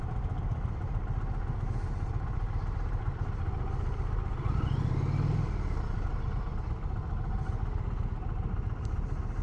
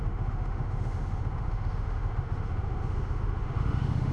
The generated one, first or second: second